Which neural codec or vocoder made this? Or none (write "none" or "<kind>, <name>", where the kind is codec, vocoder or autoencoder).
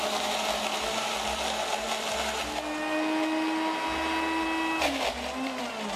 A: none